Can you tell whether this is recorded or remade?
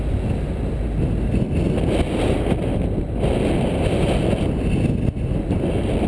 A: recorded